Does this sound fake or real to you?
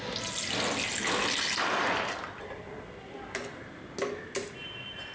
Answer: real